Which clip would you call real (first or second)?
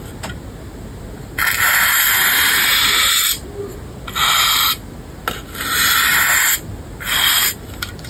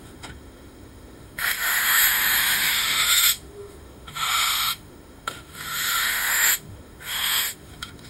first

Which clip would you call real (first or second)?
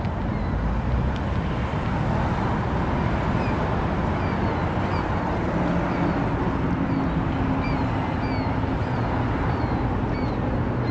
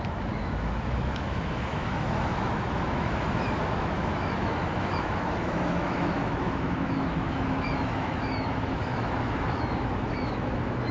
first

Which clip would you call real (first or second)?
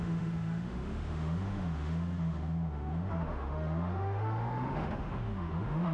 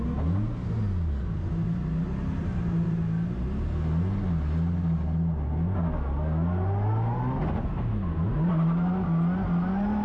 second